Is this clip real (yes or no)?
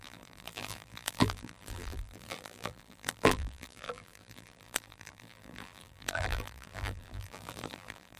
no